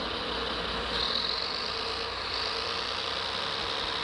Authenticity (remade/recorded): recorded